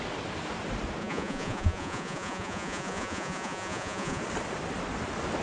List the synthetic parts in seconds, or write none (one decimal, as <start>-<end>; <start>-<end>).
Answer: 1.0-4.2